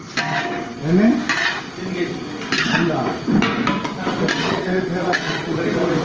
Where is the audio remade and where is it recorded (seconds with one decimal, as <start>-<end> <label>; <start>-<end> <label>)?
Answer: 0.0-4.4 recorded; 4.4-5.6 remade; 5.6-6.0 recorded